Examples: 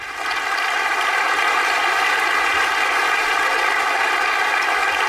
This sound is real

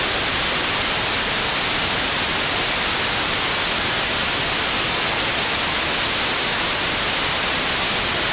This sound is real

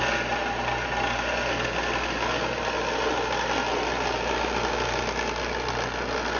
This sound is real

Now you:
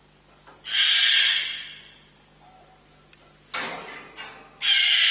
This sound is real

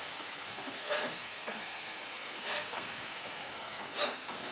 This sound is fake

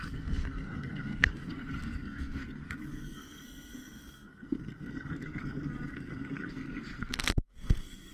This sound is fake